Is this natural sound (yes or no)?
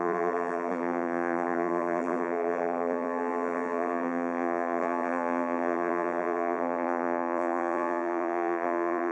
no